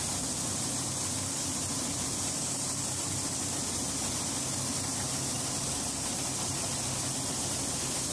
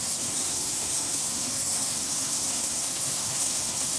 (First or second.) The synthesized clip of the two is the second